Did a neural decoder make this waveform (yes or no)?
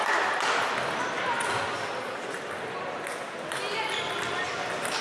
no